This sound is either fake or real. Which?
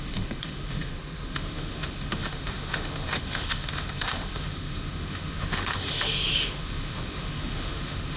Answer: fake